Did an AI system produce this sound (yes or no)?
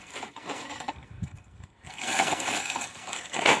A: yes